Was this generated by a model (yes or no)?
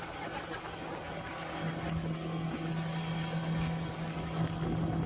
no